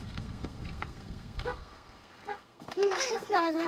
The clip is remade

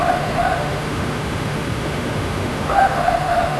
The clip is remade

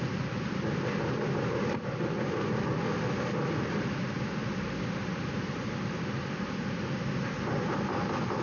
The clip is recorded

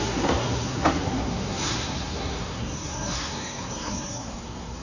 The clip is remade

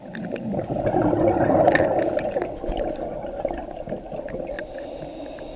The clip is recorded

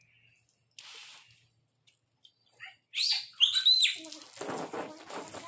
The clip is recorded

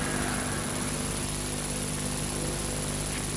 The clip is recorded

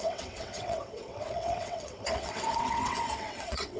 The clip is remade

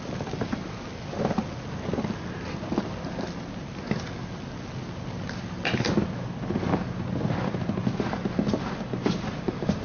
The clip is recorded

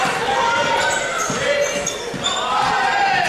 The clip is recorded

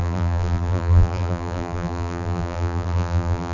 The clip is remade